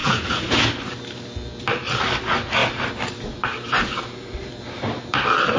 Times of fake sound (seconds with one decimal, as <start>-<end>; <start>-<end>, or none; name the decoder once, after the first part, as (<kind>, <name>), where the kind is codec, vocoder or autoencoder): 0.0-0.7 (vocoder, Vocos)